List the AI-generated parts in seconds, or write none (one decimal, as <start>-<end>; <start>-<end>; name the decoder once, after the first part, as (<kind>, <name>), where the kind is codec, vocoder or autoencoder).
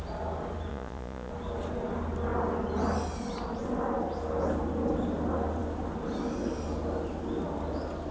0.7-1.3 (vocoder, Vocos)